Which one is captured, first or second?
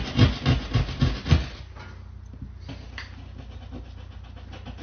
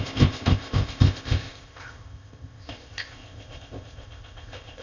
first